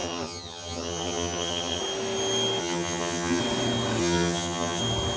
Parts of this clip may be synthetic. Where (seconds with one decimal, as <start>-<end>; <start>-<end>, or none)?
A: 0.0-1.8; 2.6-3.4; 4.0-4.8

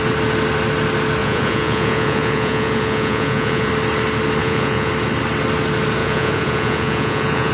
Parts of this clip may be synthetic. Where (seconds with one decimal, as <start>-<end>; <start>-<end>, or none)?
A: 1.2-3.7; 4.4-4.9; 6.0-7.5

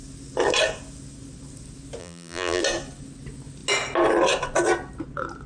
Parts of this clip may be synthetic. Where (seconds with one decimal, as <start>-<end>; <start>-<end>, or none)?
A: 2.0-2.6

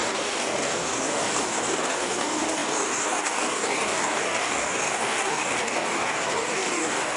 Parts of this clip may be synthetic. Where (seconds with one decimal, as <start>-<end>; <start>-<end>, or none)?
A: 0.0-7.2